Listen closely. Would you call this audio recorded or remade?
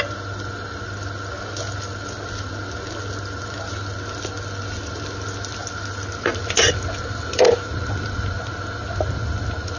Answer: recorded